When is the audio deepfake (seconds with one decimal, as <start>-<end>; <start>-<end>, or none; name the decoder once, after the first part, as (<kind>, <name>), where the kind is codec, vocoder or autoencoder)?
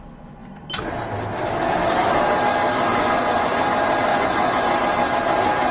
2.9-3.6 (vocoder, Vocos); 4.1-4.8